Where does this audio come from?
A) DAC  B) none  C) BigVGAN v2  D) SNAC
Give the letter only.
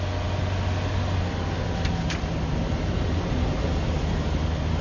B